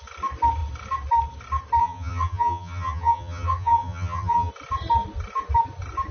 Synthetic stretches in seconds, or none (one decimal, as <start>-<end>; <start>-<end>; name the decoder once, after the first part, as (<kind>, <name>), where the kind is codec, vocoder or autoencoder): 1.8-4.5 (vocoder, HiFi-GAN)